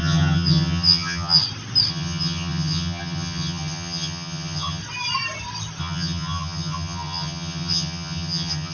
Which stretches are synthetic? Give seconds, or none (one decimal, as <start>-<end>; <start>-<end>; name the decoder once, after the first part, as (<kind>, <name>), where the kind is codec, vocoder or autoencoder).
0.0-1.4 (vocoder, HiFi-GAN); 1.9-4.8; 5.8-8.7